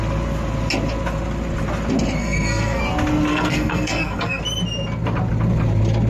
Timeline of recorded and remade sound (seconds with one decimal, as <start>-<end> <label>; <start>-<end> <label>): 0.0-2.2 recorded; 2.2-2.8 remade; 2.8-3.3 recorded; 3.3-4.4 remade; 4.4-6.1 recorded